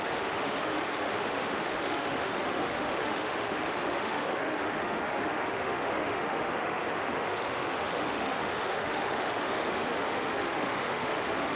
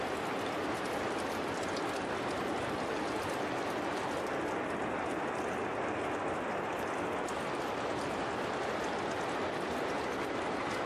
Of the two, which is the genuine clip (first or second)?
second